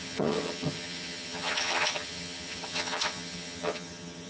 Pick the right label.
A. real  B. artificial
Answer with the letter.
B